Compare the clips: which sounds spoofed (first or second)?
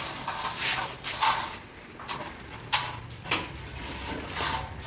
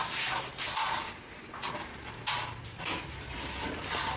first